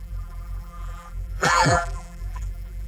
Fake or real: fake